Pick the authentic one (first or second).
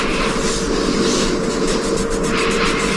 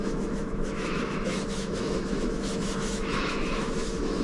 first